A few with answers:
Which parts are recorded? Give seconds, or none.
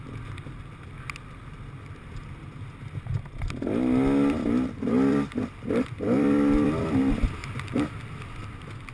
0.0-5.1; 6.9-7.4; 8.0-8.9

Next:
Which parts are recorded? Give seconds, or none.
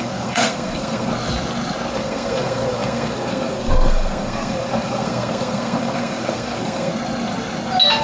1.1-1.9; 6.9-8.0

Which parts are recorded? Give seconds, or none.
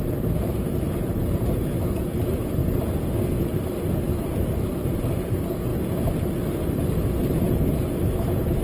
2.6-4.8; 5.7-7.2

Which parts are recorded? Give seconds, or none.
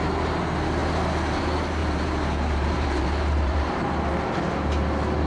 0.0-1.8; 3.8-5.3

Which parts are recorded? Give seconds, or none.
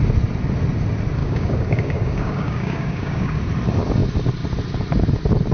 0.0-1.2; 3.4-5.5